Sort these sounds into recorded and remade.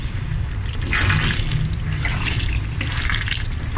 recorded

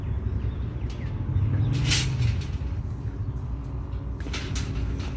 recorded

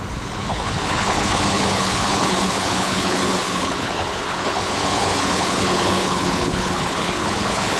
remade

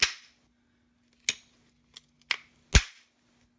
recorded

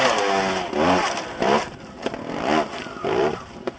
recorded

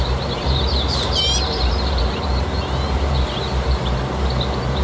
remade